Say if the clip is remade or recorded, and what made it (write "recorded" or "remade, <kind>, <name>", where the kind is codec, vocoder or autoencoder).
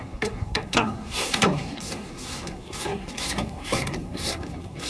remade, codec, SNAC